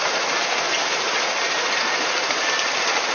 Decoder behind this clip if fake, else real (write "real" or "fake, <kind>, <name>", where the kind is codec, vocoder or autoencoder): real